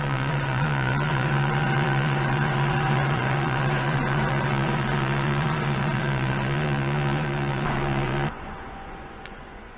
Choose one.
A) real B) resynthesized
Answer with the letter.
B